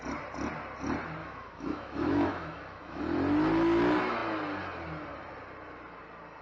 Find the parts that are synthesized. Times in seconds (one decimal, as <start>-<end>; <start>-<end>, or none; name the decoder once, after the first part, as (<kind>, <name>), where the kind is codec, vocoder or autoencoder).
1.2-3.0 (autoencoder, DAC-VAE)